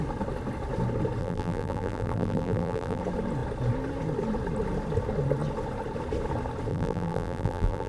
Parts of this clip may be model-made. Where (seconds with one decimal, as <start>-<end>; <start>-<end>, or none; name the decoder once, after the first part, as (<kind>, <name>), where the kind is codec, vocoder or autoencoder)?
1.2-3.0 (vocoder, BigVGAN v2); 6.7-7.9